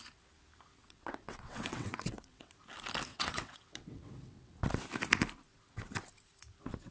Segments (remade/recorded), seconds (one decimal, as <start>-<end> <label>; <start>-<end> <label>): 0.0-0.8 recorded; 0.8-2.5 remade; 2.5-3.1 recorded; 3.1-4.8 remade; 4.8-6.9 recorded